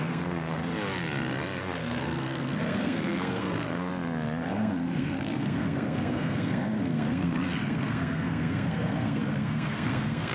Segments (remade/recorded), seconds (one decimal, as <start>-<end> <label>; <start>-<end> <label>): 0.0-0.6 remade; 0.6-1.6 recorded; 1.6-3.9 remade; 3.9-4.5 recorded; 4.5-10.3 remade